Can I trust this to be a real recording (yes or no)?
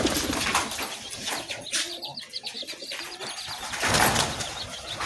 yes